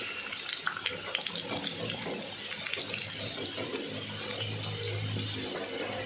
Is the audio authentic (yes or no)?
yes